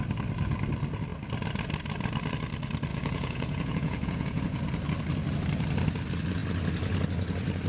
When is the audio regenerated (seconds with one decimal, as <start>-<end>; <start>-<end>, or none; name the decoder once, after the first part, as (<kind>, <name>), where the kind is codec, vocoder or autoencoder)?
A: 2.9-4.6 (vocoder, Vocos)